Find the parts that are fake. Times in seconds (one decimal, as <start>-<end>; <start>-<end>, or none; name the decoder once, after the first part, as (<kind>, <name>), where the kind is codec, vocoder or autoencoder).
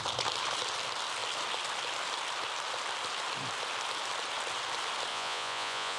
5.1-6.0 (vocoder, Vocos)